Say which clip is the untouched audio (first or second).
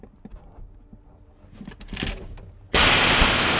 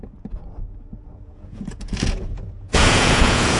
first